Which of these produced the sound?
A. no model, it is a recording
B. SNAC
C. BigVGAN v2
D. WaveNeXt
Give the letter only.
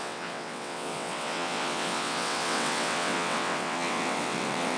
D